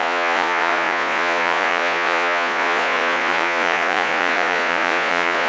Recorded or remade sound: remade